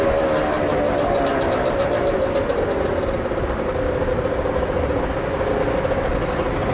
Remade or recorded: recorded